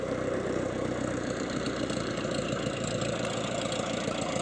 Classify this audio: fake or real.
fake